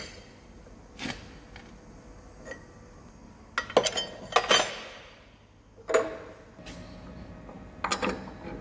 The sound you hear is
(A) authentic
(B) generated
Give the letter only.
A